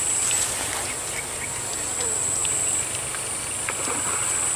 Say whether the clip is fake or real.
fake